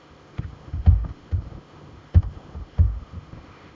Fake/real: fake